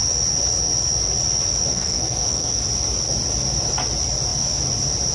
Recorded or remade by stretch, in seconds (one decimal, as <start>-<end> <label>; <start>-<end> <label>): 0.0-1.7 recorded; 1.7-2.6 remade; 2.6-5.1 recorded